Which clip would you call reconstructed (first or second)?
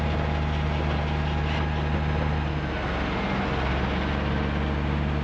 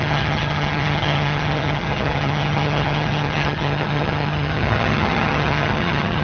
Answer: second